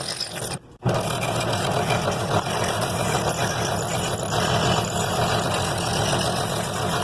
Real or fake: real